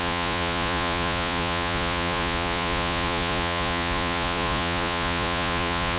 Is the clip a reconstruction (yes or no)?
yes